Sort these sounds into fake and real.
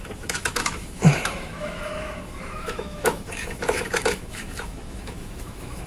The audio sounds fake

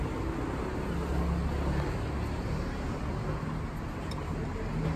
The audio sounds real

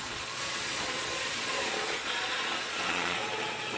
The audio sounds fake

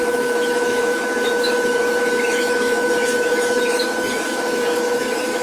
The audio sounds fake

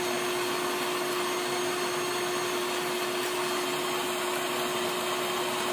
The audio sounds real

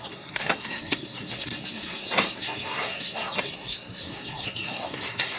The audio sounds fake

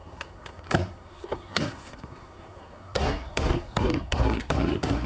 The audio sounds fake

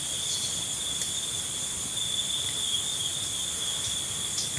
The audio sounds real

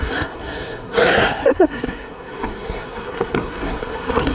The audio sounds fake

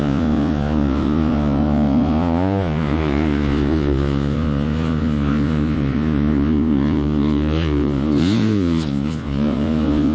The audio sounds fake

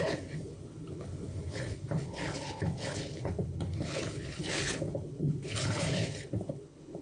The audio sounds fake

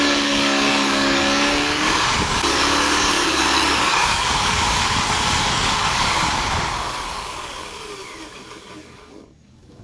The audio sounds fake